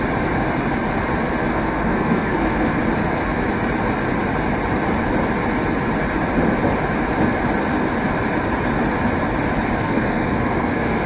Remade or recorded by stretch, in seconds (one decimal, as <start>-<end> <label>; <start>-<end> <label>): 0.0-1.5 recorded; 1.5-2.8 remade; 2.8-9.8 recorded; 9.8-11.1 remade